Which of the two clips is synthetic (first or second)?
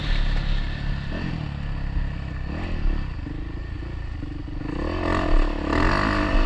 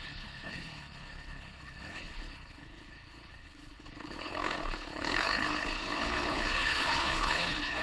second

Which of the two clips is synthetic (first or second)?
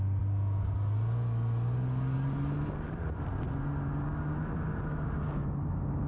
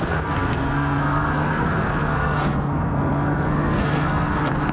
second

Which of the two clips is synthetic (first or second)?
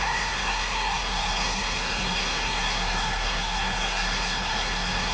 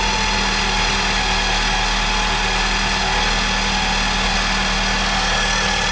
first